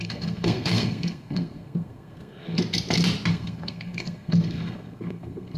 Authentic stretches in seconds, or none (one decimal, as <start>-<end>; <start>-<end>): 2.6-3.3